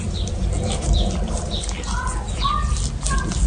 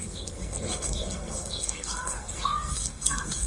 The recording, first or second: first